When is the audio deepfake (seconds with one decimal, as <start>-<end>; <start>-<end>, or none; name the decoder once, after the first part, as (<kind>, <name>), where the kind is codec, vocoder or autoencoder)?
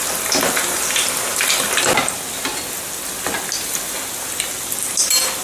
none